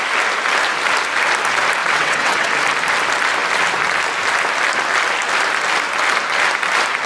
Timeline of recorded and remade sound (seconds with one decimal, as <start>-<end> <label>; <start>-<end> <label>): 0.0-1.8 recorded; 1.8-2.5 remade; 2.5-7.1 recorded